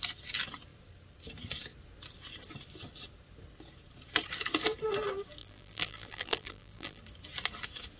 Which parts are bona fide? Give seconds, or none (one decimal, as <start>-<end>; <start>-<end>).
0.0-5.4; 7.0-8.0